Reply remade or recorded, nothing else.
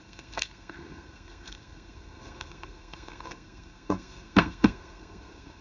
remade